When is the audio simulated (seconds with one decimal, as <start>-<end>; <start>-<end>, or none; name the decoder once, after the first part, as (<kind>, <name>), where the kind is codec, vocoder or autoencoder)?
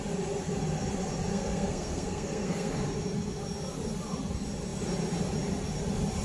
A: 1.3-2.7 (codec, SNAC)